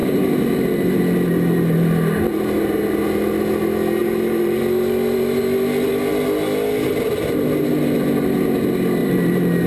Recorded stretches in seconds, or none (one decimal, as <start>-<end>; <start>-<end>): 1.0-4.0; 4.6-9.0